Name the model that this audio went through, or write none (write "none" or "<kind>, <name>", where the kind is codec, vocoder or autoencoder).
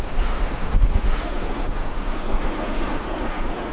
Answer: autoencoder, DAC-VAE